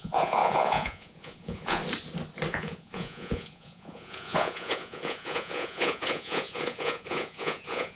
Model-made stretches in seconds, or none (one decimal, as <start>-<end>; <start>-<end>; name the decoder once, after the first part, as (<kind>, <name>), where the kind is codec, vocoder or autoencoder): 0.0-1.8 (vocoder, Vocos); 2.5-8.0